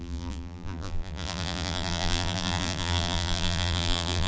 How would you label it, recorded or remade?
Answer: remade